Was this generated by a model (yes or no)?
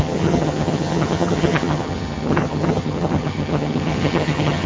yes